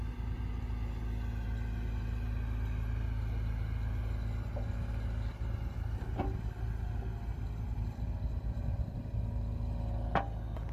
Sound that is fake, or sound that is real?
real